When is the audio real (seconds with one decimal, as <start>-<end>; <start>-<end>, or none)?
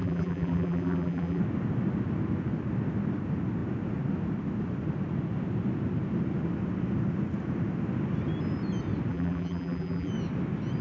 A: 1.4-9.1; 10.1-10.8